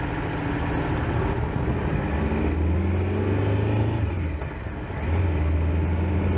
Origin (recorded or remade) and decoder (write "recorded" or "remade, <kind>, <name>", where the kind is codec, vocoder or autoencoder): recorded